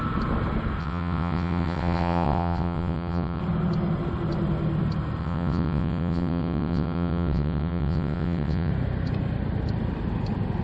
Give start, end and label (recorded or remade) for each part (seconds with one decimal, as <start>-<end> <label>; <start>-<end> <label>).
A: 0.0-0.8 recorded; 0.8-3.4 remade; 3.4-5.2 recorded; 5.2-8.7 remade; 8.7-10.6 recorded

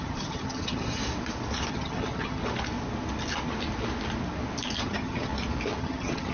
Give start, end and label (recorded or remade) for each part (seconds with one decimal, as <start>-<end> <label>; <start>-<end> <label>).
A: 0.0-1.0 remade; 1.0-1.7 recorded; 1.7-2.4 remade; 2.4-4.8 recorded; 4.8-5.3 remade; 5.3-5.8 recorded; 5.8-6.3 remade

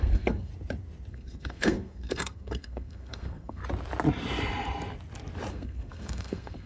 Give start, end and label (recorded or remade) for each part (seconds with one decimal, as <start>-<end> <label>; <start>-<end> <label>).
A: 0.0-0.5 remade; 0.5-1.1 recorded; 1.1-3.6 remade; 3.6-5.5 recorded; 5.5-6.7 remade

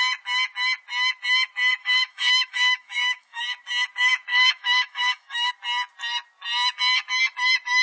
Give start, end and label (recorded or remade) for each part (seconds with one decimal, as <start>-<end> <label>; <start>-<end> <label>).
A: 0.0-1.8 recorded; 1.8-3.4 remade; 3.4-4.3 recorded; 4.3-5.5 remade; 5.5-7.8 recorded

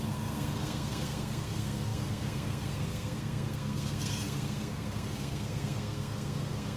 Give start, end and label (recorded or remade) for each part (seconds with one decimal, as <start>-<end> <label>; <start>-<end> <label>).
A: 0.0-6.8 remade

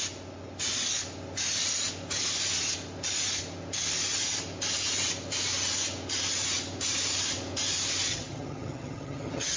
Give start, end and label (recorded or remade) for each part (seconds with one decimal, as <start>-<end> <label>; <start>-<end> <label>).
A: 0.0-8.1 recorded; 8.1-9.6 remade